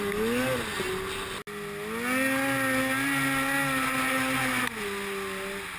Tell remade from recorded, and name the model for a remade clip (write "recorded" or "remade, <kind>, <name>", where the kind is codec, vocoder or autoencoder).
recorded